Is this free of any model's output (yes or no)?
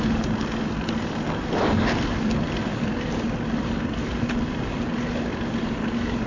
yes